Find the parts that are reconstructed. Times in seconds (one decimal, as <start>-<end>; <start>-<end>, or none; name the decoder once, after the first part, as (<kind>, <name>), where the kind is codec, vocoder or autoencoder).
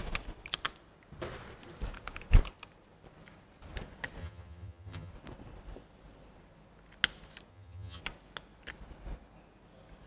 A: 4.2-5.1 (vocoder, HiFi-GAN); 7.5-8.0